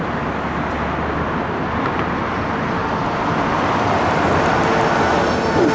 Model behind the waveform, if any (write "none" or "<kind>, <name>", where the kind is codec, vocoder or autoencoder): none